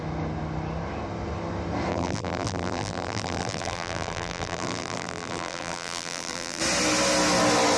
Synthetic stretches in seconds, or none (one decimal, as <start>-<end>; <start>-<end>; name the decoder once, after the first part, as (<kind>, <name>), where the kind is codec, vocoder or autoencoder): 1.9-6.6 (vocoder, BigVGAN v2)